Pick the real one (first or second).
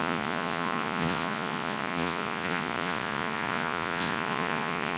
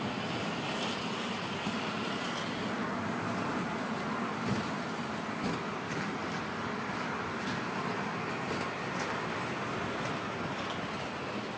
second